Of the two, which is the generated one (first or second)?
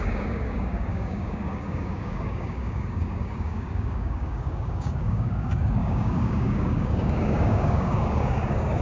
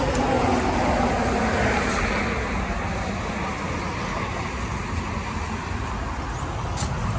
first